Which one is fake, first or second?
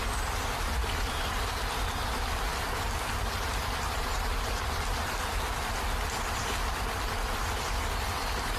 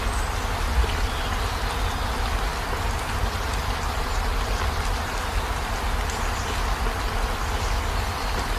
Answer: first